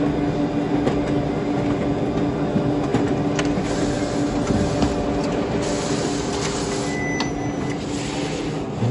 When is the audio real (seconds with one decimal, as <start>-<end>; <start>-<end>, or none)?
0.0-8.9